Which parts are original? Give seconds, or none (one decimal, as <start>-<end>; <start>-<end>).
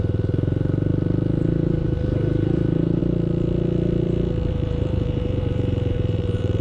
0.9-1.4; 3.0-4.5